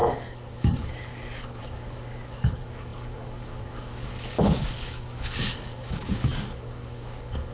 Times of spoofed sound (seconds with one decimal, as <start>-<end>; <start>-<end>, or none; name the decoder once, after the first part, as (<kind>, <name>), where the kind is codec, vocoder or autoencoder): 0.0-7.5 (codec, DAC)